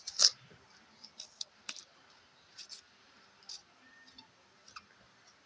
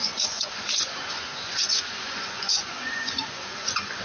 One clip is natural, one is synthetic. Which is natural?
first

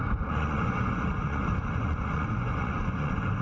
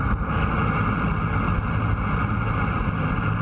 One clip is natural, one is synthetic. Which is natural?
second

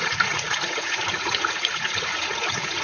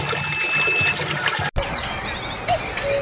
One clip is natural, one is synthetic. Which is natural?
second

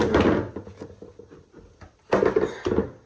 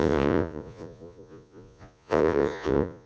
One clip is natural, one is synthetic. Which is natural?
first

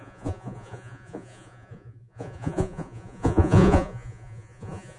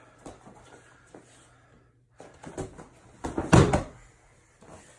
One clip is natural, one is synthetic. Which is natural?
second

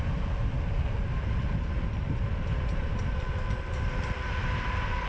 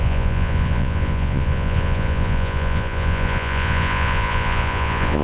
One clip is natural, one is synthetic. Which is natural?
first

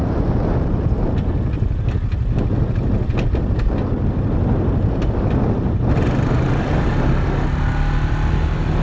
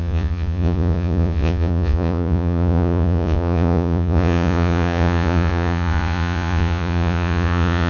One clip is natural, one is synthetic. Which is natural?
first